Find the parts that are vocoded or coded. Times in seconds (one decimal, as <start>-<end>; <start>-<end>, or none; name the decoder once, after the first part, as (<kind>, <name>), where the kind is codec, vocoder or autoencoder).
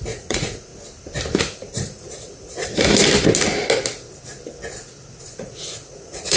0.0-0.7 (vocoder, Vocos); 1.4-2.7; 5.2-6.4